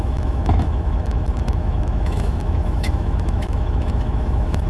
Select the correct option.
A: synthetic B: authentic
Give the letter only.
A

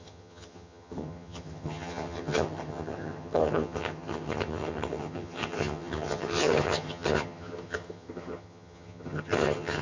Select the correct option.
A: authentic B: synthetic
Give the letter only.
B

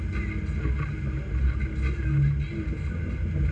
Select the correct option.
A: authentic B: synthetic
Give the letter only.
A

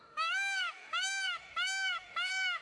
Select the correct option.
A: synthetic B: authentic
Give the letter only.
A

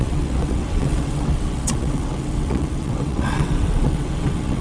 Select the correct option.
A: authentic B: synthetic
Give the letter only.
B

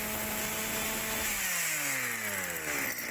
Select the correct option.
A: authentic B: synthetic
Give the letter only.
A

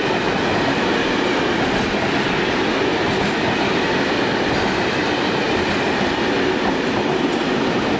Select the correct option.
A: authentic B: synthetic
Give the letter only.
A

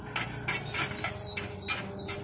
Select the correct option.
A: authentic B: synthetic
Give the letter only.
A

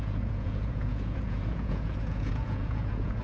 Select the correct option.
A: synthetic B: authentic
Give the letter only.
A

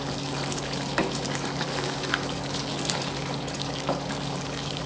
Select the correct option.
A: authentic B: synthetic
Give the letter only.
B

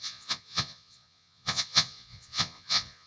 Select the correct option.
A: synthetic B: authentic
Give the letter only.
A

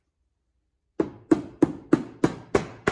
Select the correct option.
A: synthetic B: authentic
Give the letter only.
B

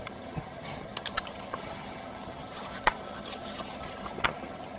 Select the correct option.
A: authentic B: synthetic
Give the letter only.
B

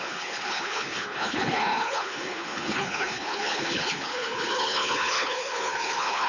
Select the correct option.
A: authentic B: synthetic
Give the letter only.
B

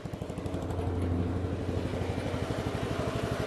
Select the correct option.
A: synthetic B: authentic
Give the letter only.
B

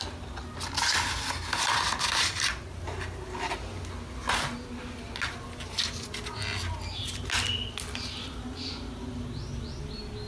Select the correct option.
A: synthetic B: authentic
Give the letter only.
B